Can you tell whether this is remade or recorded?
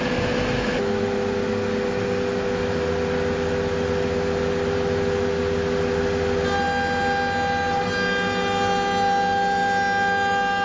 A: recorded